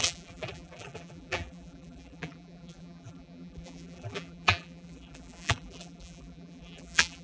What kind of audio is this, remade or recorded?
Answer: remade